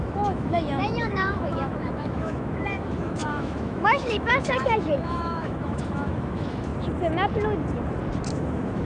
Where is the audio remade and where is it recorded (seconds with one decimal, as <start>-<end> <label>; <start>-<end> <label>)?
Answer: 0.0-6.7 remade; 6.7-8.3 recorded; 8.3-8.8 remade